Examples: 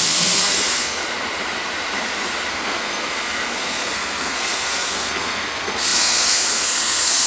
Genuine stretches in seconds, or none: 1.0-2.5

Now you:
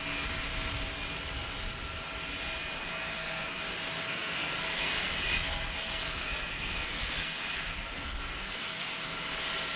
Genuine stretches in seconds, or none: 0.0-2.8; 3.6-4.0; 8.9-9.8

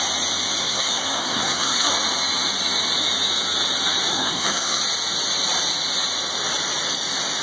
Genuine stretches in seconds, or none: 0.0-0.6; 1.9-4.1; 4.8-7.4

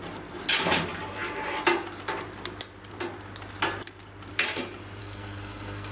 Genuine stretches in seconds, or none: 0.0-5.0

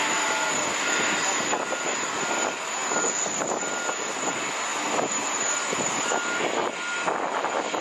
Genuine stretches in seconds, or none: 0.0-7.8

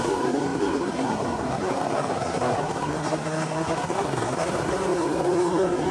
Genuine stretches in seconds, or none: none